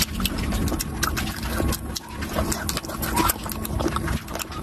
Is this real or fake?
real